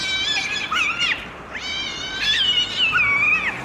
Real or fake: real